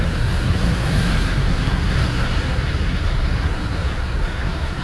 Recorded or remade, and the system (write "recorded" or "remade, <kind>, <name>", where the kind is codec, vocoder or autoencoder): remade, codec, SNAC